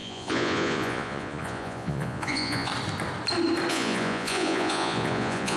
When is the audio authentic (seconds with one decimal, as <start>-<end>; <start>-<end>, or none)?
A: 2.7-3.7